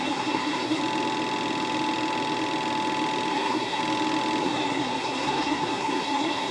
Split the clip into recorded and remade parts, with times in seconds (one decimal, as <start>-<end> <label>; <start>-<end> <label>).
0.0-0.8 remade; 0.8-3.3 recorded; 3.3-3.8 remade; 3.8-4.4 recorded; 4.4-6.5 remade